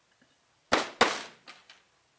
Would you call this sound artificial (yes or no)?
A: no